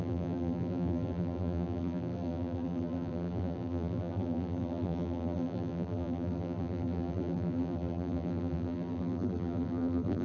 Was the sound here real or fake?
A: fake